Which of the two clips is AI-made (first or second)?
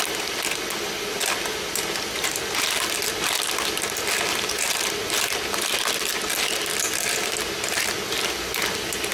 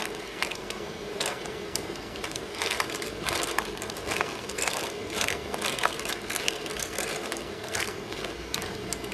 second